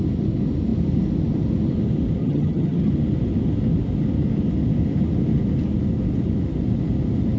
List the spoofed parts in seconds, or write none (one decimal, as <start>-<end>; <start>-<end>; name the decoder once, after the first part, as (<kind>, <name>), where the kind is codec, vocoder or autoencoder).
2.2-2.9 (vocoder, HiFi-GAN)